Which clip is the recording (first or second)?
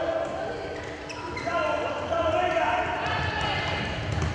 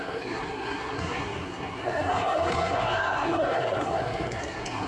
first